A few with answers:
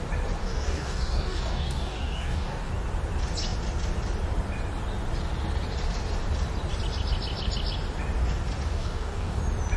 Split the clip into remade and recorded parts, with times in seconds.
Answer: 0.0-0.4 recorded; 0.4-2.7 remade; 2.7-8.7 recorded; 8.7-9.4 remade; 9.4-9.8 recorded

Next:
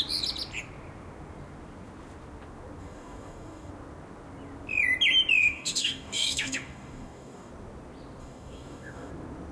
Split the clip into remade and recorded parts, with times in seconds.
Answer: 0.0-2.8 recorded; 2.8-3.7 remade; 3.7-5.4 recorded; 5.4-7.5 remade; 7.5-8.2 recorded; 8.2-9.1 remade; 9.1-9.5 recorded

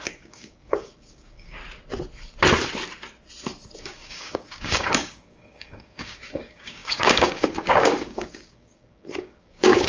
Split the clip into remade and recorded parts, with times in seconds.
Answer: 0.0-1.6 remade; 1.6-3.8 recorded; 3.8-9.9 remade

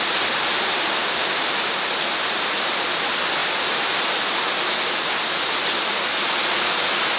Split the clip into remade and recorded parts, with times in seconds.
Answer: 0.0-7.2 recorded

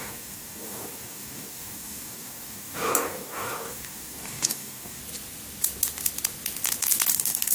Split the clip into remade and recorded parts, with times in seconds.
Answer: 0.0-5.0 remade; 5.0-7.1 recorded; 7.1-7.5 remade

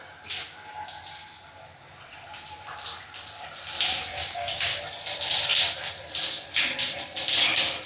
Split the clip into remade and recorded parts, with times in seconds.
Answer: 0.0-4.1 recorded; 4.1-4.8 remade; 4.8-7.9 recorded

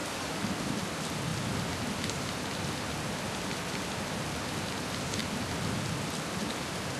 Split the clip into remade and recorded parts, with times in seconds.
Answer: 0.0-0.5 remade; 0.5-7.0 recorded